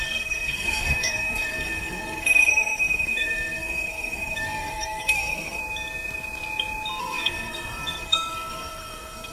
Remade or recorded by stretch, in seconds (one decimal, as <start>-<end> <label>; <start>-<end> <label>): 0.0-5.6 remade; 5.6-7.0 recorded; 7.0-9.3 remade